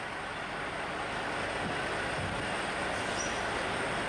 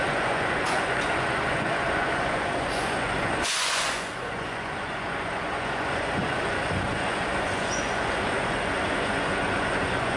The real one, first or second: first